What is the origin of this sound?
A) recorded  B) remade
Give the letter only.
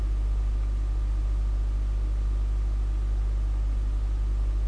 A